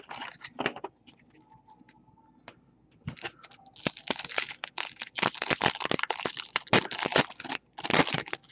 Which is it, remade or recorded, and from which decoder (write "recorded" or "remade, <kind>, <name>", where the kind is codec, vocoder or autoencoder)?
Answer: recorded